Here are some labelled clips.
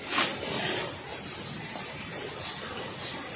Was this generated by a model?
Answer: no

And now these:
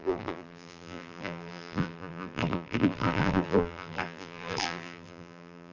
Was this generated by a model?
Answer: yes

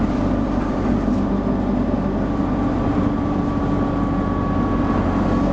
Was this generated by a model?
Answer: no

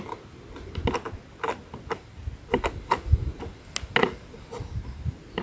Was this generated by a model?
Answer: no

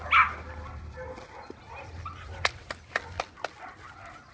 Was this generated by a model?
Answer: no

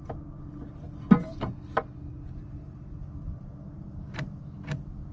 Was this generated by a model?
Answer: no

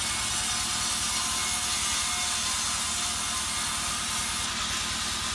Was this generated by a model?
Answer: no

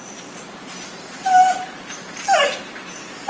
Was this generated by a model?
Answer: yes